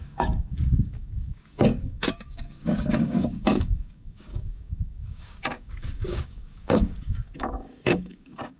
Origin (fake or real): fake